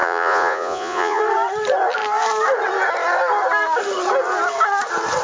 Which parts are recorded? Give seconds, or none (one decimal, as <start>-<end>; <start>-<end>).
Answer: 1.2-5.2